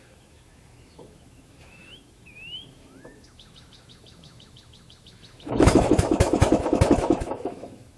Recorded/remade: remade